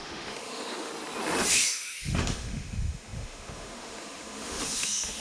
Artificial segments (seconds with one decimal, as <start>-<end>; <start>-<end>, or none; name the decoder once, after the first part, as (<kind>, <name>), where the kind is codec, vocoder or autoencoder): 0.0-0.9 (autoencoder, DAC-VAE); 1.5-5.2